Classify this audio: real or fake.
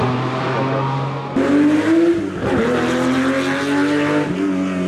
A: real